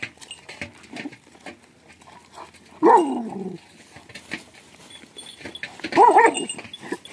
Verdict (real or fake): real